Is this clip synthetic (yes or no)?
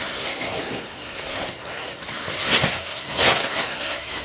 yes